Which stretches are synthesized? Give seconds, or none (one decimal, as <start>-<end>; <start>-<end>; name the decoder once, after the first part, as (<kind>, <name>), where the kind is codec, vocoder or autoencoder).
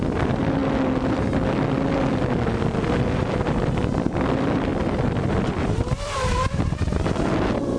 0.0-0.6 (vocoder, BigVGAN v2); 2.9-7.8